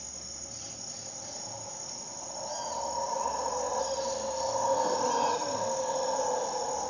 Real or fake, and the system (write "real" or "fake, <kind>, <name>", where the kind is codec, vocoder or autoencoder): real